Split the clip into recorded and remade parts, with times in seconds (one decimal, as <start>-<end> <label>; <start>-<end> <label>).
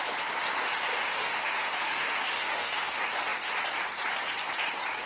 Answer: 0.0-0.9 recorded; 0.9-2.9 remade; 2.9-5.1 recorded